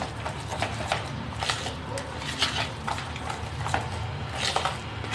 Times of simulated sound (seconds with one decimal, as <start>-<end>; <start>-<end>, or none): none